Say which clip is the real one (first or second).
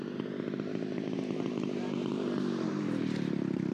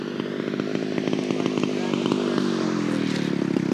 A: second